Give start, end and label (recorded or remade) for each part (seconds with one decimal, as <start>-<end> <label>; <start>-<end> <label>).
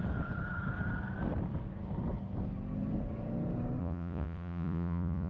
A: 0.0-3.8 recorded; 3.8-5.3 remade